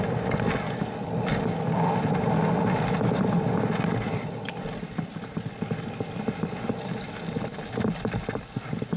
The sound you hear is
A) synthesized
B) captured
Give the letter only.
B